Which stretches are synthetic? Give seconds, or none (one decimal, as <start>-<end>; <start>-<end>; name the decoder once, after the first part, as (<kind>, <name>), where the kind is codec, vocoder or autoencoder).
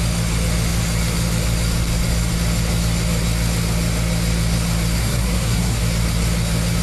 5.0-5.8 (codec, SNAC)